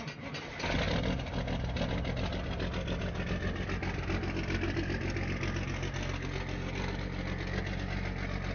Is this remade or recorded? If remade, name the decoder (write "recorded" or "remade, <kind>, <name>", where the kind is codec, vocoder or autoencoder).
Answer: recorded